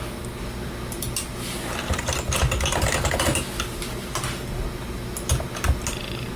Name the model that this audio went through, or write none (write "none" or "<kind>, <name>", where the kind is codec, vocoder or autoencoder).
none